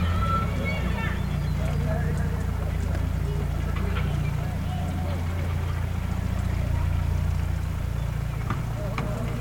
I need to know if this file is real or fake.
real